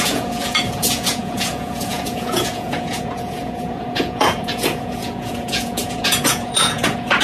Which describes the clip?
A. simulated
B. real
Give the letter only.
A